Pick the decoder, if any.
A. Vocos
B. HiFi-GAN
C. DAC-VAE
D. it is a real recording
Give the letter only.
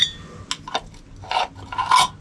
D